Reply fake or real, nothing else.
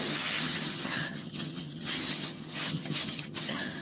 fake